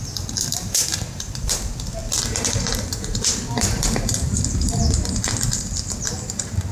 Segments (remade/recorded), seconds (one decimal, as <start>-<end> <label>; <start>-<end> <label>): 0.0-6.7 remade